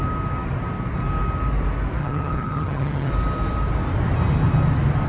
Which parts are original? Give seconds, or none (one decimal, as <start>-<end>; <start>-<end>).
0.0-2.0; 3.1-5.1